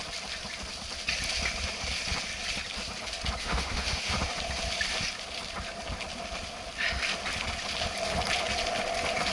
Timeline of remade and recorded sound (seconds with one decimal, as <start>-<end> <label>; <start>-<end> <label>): 0.0-3.4 recorded; 3.4-4.1 remade; 4.1-9.3 recorded